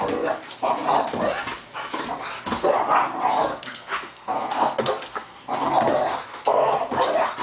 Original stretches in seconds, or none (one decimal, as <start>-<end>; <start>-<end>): 0.0-3.5; 5.4-6.3; 6.8-7.4